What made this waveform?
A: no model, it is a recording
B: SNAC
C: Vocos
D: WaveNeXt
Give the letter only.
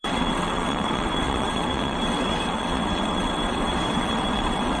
D